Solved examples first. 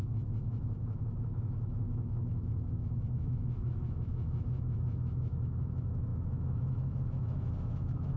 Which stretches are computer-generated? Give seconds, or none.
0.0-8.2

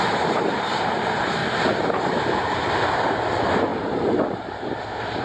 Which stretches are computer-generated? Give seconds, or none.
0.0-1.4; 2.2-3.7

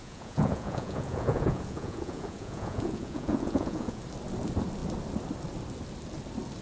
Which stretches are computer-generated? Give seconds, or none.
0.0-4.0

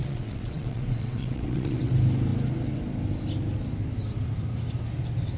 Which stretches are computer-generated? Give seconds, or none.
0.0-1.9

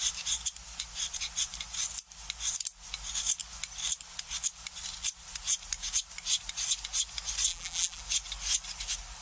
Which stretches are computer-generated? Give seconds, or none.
7.5-8.0

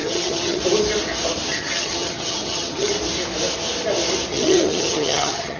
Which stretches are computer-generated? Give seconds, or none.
0.0-0.6; 1.5-2.9; 4.3-5.6

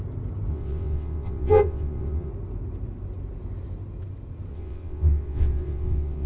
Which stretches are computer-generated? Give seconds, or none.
0.5-2.3; 4.5-6.3